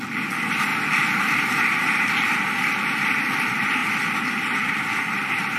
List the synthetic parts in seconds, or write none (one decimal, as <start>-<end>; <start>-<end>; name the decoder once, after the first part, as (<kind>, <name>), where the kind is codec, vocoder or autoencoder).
none